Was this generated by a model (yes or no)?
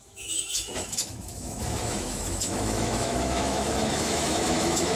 yes